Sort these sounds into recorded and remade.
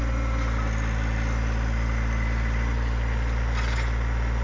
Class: recorded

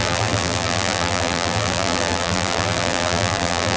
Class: remade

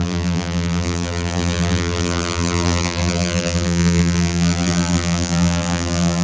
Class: remade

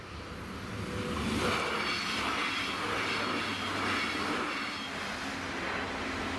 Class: recorded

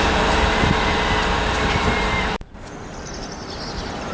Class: remade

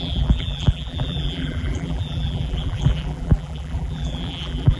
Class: remade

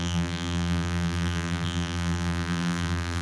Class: remade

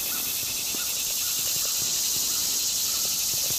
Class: remade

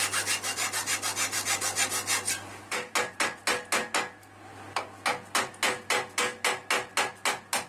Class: recorded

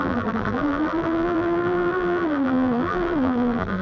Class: remade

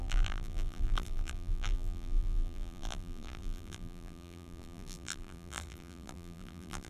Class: remade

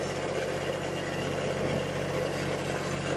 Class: recorded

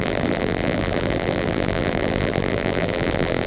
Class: remade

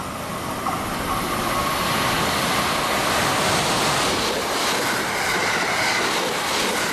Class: recorded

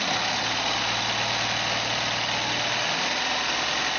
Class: recorded